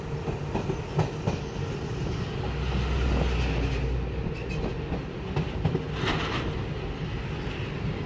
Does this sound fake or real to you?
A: real